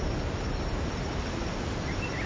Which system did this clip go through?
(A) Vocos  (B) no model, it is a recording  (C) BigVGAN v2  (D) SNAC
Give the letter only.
C